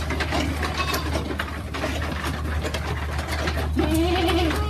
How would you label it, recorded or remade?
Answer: recorded